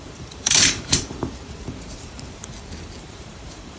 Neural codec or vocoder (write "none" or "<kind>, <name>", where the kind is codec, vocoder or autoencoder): vocoder, BigVGAN v2